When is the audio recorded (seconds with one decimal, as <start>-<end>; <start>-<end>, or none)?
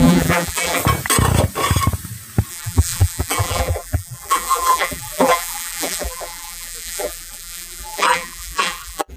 0.8-2.5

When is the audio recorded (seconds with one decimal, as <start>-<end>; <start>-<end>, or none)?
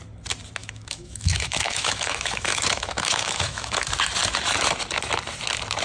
0.0-0.6; 3.8-5.8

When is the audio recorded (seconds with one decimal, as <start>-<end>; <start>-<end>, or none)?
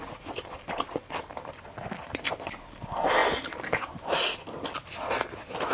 0.0-5.7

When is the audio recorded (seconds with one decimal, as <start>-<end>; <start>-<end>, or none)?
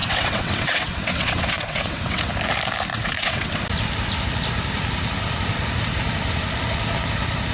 2.2-2.9; 3.6-7.5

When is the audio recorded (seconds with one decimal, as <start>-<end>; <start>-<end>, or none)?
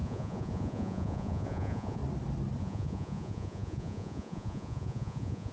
2.0-2.6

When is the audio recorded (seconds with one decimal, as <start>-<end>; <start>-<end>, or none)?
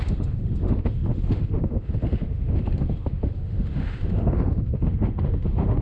none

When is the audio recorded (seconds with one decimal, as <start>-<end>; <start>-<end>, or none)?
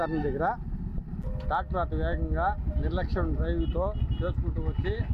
0.0-5.1